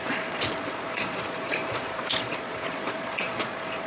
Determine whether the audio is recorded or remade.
remade